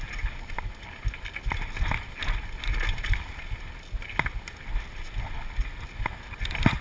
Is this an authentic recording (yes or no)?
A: yes